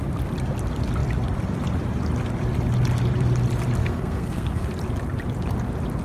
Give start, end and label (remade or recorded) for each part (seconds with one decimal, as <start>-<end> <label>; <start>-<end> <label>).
0.0-3.8 recorded; 3.8-4.7 remade; 4.7-6.0 recorded